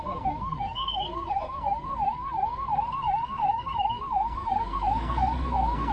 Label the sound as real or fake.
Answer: fake